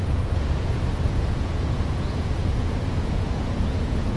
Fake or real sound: fake